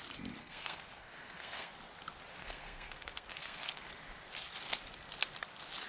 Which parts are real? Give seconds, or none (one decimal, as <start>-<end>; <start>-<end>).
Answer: 0.0-0.4; 1.7-2.4; 3.9-5.9